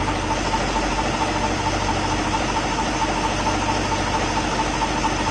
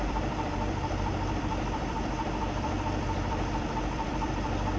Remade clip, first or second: second